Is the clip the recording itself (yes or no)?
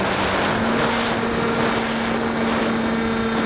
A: yes